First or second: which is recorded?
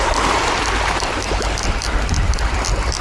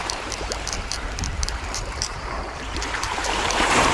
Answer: first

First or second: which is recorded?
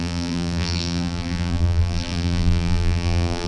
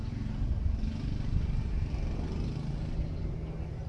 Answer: second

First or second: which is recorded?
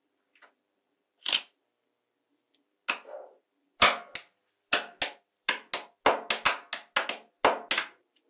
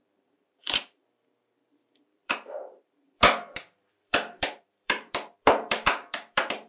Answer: first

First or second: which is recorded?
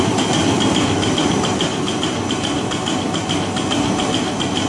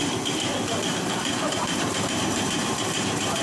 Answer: first